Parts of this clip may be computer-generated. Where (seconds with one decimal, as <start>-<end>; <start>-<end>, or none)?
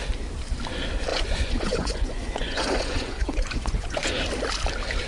1.1-4.2